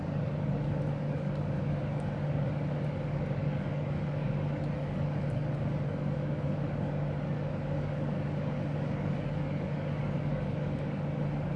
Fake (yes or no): yes